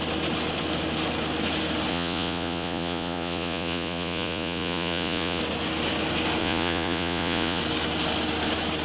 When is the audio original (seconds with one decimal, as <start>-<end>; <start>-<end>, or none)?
0.0-1.9; 5.4-6.4; 7.6-8.8